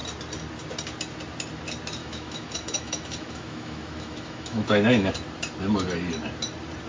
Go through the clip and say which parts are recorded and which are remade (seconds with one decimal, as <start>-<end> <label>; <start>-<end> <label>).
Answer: 0.0-2.0 recorded; 2.0-5.1 remade; 5.1-6.9 recorded